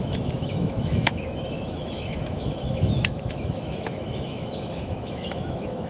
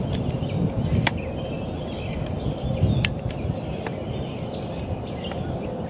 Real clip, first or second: second